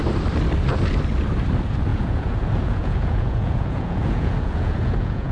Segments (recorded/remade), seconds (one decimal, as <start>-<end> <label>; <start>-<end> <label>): 0.0-1.9 recorded; 1.9-5.3 remade